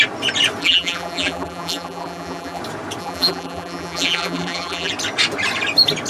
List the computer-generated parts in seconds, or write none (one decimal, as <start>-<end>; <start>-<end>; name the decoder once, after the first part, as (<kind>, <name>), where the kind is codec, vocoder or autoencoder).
0.6-2.6 (vocoder, BigVGAN v2); 3.0-4.9